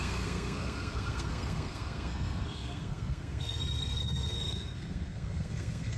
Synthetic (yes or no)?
yes